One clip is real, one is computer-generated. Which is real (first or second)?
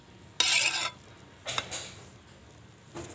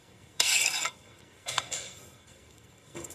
first